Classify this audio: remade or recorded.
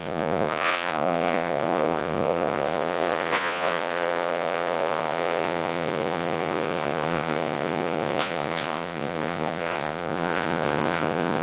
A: remade